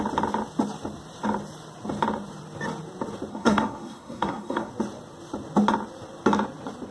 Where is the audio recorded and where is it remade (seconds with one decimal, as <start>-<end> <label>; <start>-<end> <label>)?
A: 0.0-3.3 recorded; 3.3-4.7 remade; 4.7-6.9 recorded